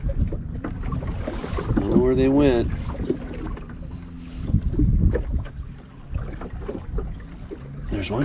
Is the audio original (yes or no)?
yes